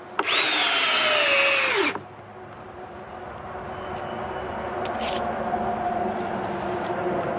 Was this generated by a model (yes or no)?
no